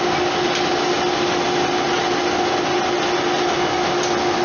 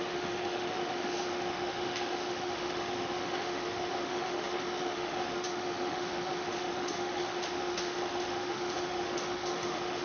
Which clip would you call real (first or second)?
first